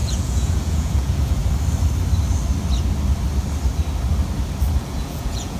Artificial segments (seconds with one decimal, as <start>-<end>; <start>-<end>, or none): 0.0-1.4; 4.8-5.6